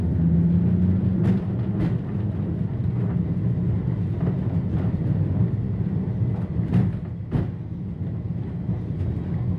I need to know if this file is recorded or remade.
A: recorded